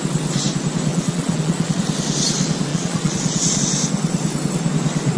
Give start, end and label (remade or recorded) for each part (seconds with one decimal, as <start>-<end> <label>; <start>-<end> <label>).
0.0-0.9 recorded; 0.9-1.8 remade; 1.8-2.7 recorded; 2.7-3.6 remade; 3.6-5.2 recorded